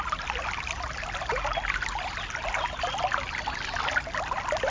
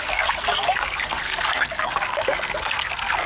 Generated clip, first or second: second